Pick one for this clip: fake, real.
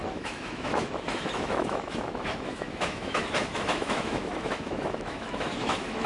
fake